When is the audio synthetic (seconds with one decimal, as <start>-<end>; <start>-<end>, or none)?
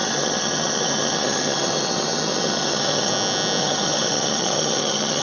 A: 0.0-3.1; 3.6-5.2